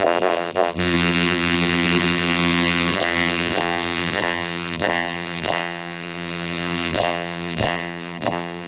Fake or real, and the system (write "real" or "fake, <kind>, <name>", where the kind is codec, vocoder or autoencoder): fake, vocoder, BigVGAN v2